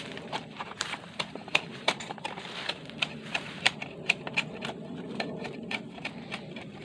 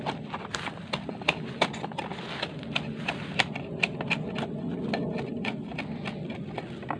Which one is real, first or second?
second